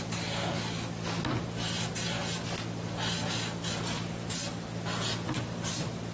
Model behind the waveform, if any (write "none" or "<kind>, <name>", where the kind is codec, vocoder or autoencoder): none